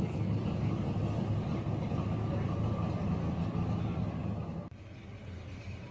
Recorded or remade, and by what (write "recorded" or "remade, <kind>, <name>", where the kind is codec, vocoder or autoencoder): recorded